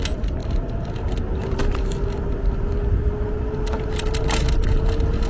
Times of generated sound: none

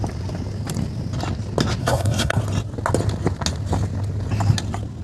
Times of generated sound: 1.8-2.4 (codec, SNAC)

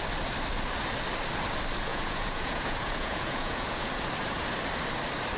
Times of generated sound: 1.9-3.9 (vocoder, Vocos)

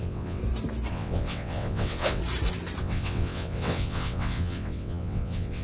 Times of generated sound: 0.0-0.4 (vocoder, WaveNeXt); 0.9-2.2; 2.8-5.6

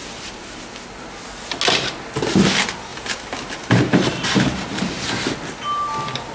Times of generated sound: 0.0-0.6 (vocoder, BigVGAN v2); 2.9-4.9

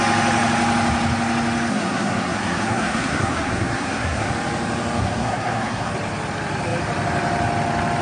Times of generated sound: 1.7-4.3 (codec, SNAC); 5.0-5.9

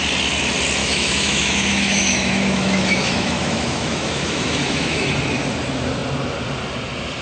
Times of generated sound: 0.8-5.1 (autoencoder, DAC-VAE)

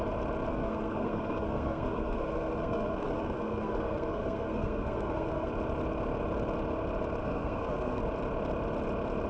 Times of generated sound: 0.5-5.5 (codec, SNAC); 7.2-8.0